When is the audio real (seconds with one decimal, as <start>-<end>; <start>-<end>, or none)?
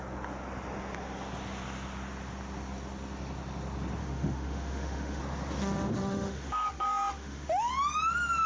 0.0-4.0; 5.2-6.0; 7.7-8.5